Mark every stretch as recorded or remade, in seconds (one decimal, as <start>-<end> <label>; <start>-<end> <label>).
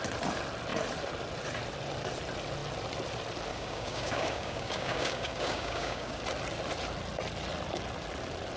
0.0-3.5 recorded; 3.5-6.2 remade; 6.2-8.6 recorded